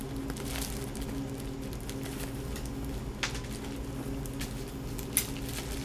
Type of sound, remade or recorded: recorded